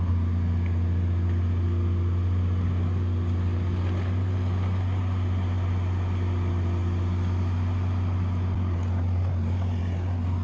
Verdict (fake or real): real